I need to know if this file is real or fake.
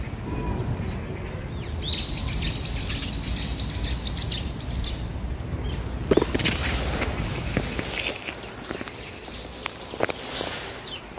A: real